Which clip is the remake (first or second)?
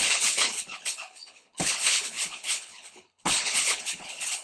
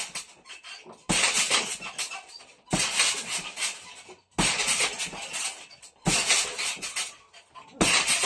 first